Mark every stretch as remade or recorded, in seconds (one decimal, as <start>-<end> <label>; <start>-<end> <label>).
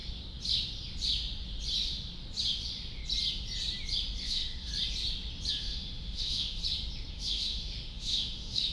0.0-4.2 recorded; 4.2-4.7 remade; 4.7-5.5 recorded; 5.5-6.6 remade; 6.6-7.1 recorded; 7.1-8.7 remade